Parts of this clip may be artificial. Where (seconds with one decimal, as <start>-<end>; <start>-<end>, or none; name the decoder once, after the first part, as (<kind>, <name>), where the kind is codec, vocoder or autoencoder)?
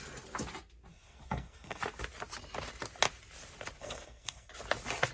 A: 0.9-1.8 (codec, SNAC); 3.8-4.5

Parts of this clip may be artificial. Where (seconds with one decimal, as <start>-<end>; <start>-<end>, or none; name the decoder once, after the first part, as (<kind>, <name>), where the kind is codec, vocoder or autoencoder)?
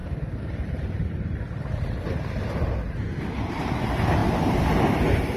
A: 0.0-3.2 (vocoder, BigVGAN v2)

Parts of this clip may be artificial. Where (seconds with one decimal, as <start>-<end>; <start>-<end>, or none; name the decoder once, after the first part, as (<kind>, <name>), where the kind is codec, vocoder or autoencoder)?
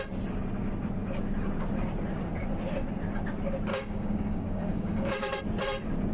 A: 3.7-5.4 (codec, DAC)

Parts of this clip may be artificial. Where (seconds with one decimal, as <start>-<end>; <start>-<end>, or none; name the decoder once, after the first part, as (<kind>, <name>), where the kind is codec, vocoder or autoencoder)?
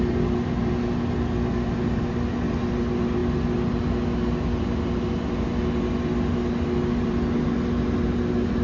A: none